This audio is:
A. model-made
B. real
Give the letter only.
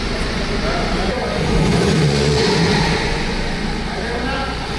A